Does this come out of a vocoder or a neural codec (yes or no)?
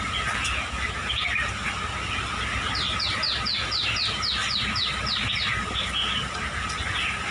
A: yes